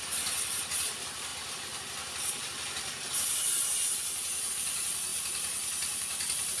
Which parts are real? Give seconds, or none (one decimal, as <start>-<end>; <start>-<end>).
1.3-4.5